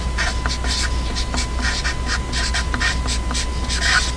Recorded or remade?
recorded